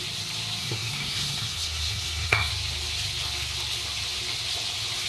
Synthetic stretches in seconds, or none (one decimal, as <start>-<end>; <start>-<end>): 0.6-2.5